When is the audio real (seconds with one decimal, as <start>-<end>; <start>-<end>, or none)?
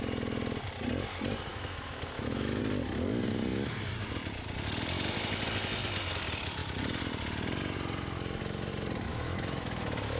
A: 0.0-1.5; 2.6-9.1